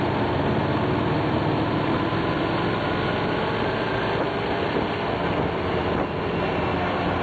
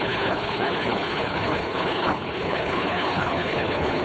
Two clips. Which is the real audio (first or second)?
first